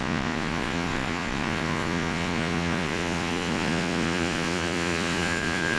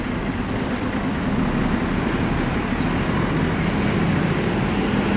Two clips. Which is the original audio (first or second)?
second